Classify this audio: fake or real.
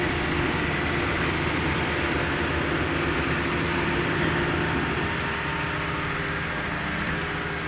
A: real